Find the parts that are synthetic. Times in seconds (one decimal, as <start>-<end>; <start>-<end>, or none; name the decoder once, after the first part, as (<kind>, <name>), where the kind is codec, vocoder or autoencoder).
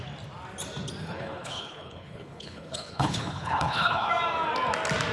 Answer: 1.0-4.1 (codec, HILCodec)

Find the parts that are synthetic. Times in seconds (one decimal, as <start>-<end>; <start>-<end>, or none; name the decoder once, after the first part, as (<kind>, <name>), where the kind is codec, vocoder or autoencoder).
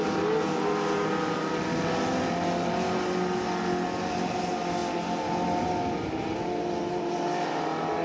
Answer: none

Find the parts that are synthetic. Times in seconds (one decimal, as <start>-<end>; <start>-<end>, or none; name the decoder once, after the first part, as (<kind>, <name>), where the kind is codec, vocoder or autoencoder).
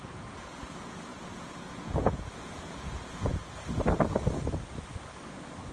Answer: 0.0-3.4 (vocoder, Vocos)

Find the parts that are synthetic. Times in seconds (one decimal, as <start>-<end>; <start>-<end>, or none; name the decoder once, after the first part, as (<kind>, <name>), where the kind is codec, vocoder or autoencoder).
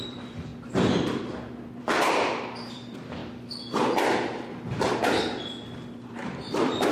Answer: 0.0-0.5 (vocoder, BigVGAN v2); 1.8-3.2; 6.1-6.9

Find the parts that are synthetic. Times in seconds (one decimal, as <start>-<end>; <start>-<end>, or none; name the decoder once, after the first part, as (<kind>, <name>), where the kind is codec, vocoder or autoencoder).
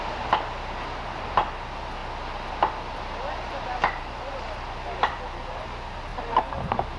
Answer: none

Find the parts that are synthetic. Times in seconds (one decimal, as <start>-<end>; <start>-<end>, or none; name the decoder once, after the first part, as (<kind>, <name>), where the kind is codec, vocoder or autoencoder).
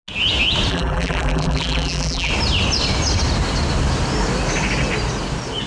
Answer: 0.7-2.3 (vocoder, BigVGAN v2)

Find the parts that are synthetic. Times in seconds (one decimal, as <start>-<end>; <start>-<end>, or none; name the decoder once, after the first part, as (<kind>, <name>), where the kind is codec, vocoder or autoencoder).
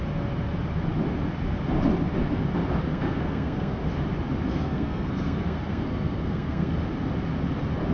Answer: 2.9-3.9 (codec, SNAC); 4.5-6.7